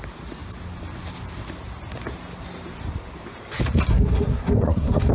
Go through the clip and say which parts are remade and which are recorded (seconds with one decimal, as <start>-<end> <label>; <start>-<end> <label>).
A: 0.0-3.9 recorded; 3.9-5.1 remade